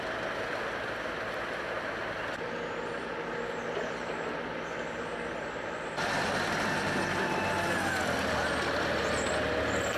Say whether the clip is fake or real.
real